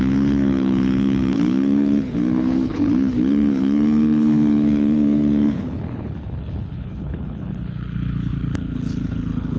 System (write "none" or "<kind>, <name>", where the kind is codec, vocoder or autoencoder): codec, HILCodec